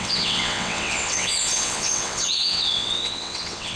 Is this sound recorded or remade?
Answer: remade